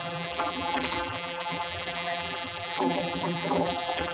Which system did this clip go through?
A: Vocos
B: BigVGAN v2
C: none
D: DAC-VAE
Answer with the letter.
B